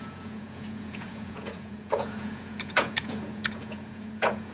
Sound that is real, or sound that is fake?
fake